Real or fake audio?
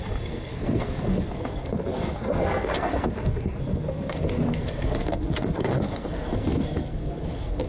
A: fake